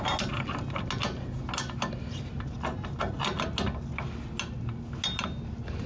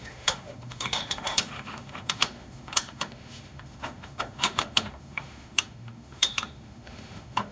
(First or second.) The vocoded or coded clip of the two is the second